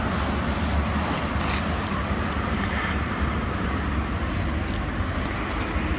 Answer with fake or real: real